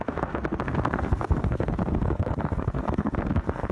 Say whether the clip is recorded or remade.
remade